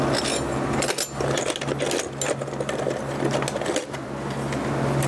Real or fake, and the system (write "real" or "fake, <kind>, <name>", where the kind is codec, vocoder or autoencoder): real